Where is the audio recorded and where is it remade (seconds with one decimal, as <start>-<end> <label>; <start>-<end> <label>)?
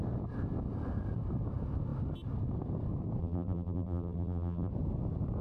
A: 0.0-3.2 recorded; 3.2-4.7 remade; 4.7-5.4 recorded